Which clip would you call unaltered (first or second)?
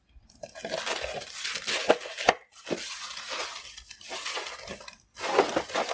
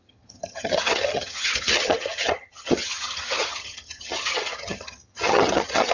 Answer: first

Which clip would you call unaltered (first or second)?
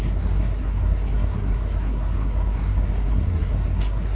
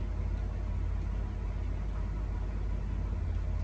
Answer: second